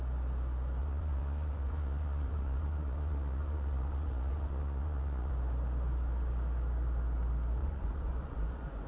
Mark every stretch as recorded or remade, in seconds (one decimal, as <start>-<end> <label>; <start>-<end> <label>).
0.0-0.8 recorded; 0.8-5.3 remade; 5.3-7.6 recorded; 7.6-8.9 remade